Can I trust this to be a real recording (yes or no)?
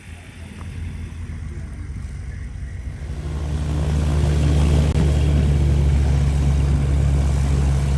yes